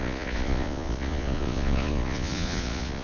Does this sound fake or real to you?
fake